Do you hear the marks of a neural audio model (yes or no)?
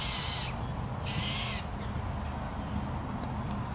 no